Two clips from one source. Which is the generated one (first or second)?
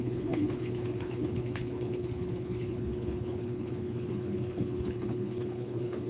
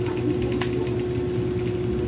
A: first